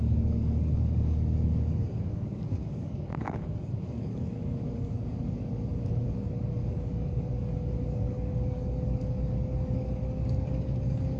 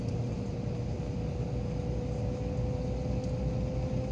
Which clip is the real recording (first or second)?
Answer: second